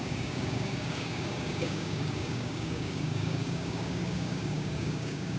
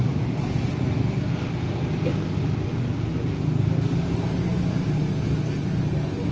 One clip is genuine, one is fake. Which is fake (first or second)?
first